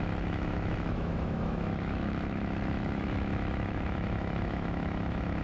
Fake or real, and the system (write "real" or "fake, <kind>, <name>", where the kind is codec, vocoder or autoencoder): fake, autoencoder, DAC-VAE